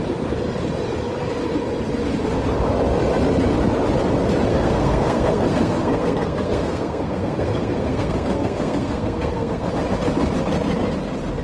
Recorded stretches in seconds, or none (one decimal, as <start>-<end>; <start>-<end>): 0.0-4.5; 9.7-11.4